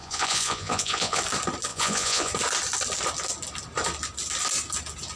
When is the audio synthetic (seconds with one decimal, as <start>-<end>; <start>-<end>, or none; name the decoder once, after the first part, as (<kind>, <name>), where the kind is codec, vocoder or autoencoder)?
0.0-1.2 (vocoder, Vocos); 1.7-2.3